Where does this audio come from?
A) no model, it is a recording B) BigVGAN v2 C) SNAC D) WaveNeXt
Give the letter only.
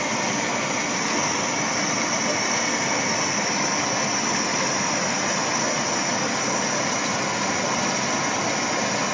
A